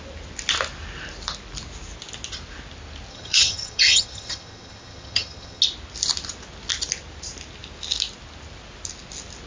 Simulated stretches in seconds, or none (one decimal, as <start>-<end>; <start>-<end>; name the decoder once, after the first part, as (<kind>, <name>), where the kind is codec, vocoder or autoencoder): 3.1-5.6 (vocoder, HiFi-GAN)